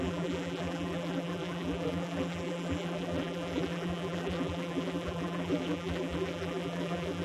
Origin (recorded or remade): remade